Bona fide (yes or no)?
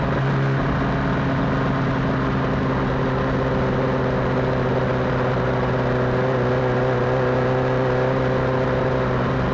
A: yes